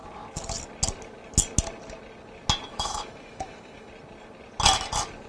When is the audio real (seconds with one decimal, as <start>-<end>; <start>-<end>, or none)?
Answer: 0.0-2.7; 3.9-5.3